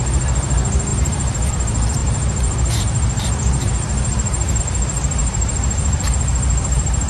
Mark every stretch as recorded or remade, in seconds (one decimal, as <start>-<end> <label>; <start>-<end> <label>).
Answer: 0.0-0.9 recorded; 0.9-1.5 remade; 1.5-2.0 recorded; 2.0-4.6 remade; 4.6-5.2 recorded; 5.2-6.1 remade; 6.1-7.1 recorded